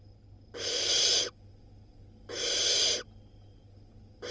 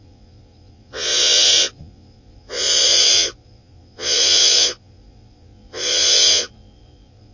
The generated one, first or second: second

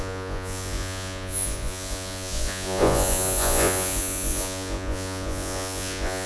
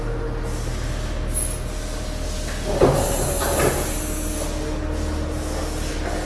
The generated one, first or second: first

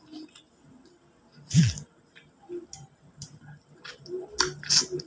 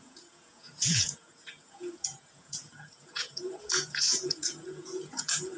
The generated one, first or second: second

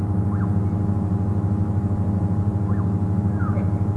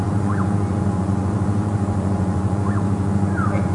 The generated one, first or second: second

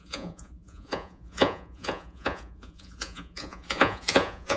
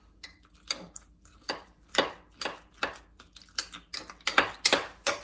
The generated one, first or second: first